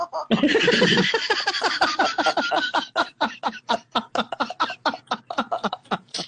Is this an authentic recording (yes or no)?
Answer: no